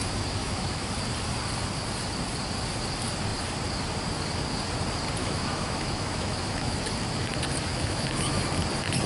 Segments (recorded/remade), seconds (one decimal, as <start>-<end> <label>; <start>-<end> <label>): 0.0-0.4 recorded; 0.4-0.9 remade; 0.9-5.2 recorded; 5.2-6.8 remade; 6.8-7.7 recorded; 7.7-8.4 remade; 8.4-9.1 recorded